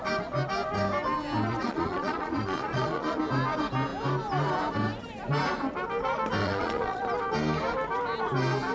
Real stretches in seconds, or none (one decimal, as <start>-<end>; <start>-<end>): 0.0-1.5; 3.2-6.4; 7.0-8.7